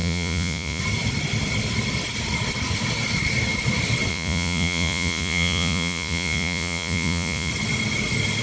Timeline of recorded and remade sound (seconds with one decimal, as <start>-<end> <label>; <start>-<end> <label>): 0.0-0.8 remade; 0.8-4.1 recorded; 4.1-7.5 remade; 7.5-8.4 recorded